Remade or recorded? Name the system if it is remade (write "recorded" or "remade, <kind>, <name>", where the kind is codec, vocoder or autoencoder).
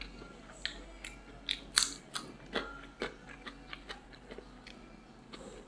recorded